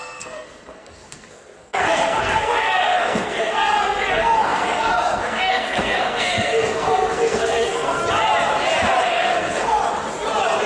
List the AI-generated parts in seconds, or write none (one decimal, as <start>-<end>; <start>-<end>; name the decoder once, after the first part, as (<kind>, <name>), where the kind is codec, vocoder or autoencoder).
0.0-8.0 (codec, SNAC); 9.0-9.8